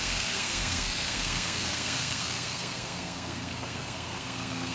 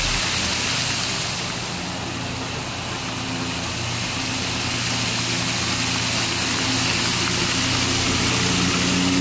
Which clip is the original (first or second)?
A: second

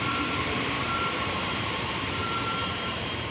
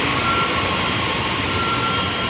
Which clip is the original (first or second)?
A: second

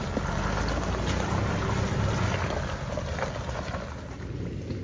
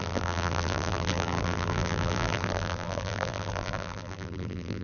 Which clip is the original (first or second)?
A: first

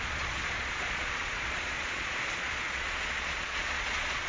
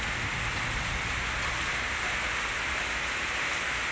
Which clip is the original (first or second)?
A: second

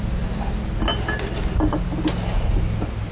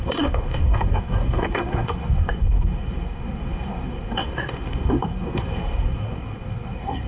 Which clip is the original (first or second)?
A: first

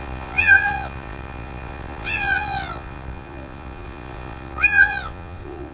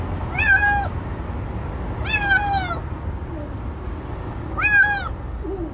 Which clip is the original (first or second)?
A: second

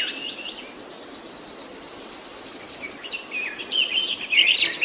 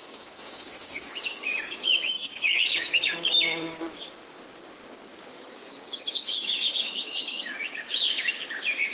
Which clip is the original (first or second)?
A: first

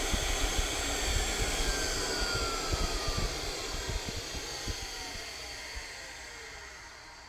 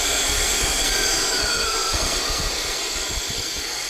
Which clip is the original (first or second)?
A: first